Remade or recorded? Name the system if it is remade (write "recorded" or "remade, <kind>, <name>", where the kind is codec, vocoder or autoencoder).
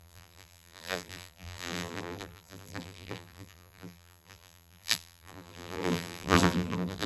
remade, vocoder, BigVGAN v2